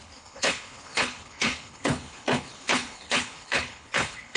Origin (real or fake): fake